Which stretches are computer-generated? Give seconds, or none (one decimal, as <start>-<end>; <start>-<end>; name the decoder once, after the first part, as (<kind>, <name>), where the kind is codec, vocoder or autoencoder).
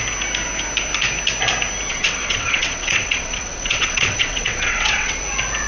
1.9-5.2 (vocoder, WaveNeXt)